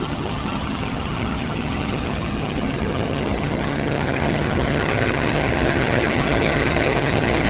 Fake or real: fake